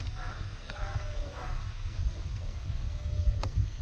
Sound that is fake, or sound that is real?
fake